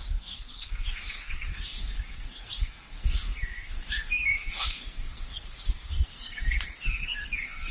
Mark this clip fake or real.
fake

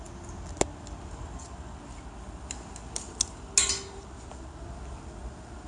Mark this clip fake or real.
real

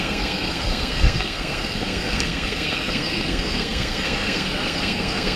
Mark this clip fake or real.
fake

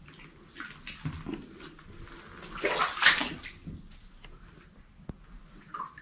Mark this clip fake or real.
real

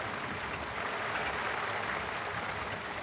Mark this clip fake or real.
real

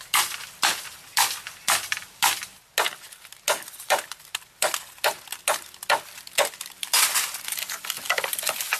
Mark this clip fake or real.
real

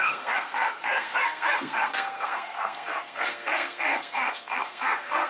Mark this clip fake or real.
fake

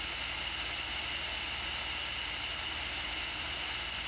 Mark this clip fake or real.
real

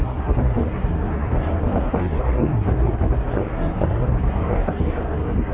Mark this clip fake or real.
fake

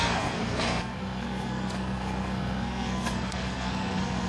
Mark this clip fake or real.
fake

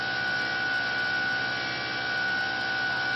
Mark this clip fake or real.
real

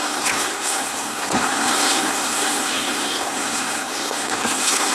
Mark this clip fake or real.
fake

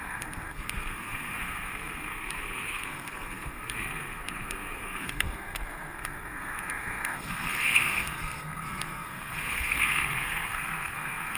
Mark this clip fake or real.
fake